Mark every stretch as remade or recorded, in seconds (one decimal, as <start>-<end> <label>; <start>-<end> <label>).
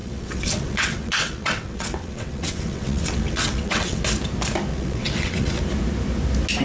0.0-4.0 remade; 4.0-4.7 recorded; 4.7-5.6 remade; 5.6-6.6 recorded